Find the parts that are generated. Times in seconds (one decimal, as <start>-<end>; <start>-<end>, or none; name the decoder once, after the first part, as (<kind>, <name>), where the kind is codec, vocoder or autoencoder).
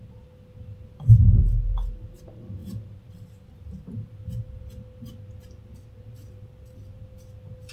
2.6-4.6 (vocoder, BigVGAN v2)